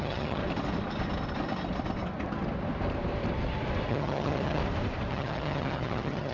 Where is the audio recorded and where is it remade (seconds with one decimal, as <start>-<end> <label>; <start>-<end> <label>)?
0.0-0.4 remade; 0.4-3.9 recorded; 3.9-4.6 remade; 4.6-5.1 recorded; 5.1-6.3 remade

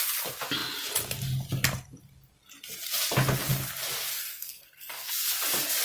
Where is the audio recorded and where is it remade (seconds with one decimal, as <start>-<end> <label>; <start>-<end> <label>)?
0.0-4.1 recorded; 4.1-5.1 remade; 5.1-5.8 recorded

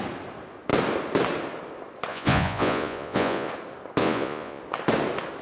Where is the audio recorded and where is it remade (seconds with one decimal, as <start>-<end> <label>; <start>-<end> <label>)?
0.0-2.1 recorded; 2.1-3.5 remade; 3.5-4.0 recorded; 4.0-4.6 remade; 4.6-5.4 recorded

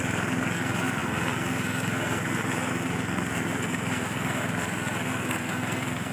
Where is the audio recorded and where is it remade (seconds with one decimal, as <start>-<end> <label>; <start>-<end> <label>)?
0.0-6.1 remade

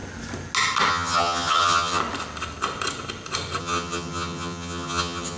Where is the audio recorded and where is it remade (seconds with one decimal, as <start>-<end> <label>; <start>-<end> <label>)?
0.0-0.9 recorded; 0.9-2.0 remade; 2.0-3.6 recorded; 3.6-5.4 remade